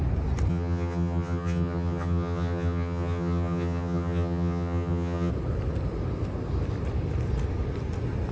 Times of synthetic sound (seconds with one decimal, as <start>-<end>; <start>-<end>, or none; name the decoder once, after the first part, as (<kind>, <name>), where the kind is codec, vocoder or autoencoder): 0.5-5.3 (vocoder, HiFi-GAN)